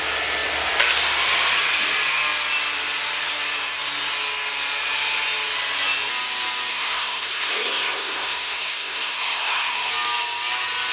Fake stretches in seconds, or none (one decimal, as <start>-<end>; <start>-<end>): 6.7-9.9